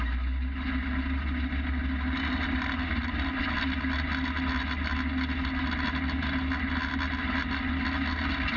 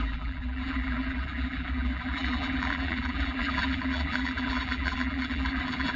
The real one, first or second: first